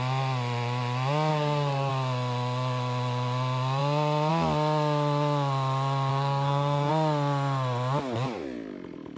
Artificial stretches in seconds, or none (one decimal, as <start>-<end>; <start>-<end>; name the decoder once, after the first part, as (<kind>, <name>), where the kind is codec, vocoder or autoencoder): 1.3-1.9 (codec, SNAC); 6.1-6.9